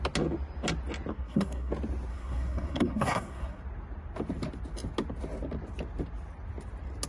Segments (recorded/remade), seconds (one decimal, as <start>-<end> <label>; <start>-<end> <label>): 0.0-1.1 recorded; 1.1-1.7 remade; 1.7-2.1 recorded; 2.1-3.6 remade; 3.6-7.1 recorded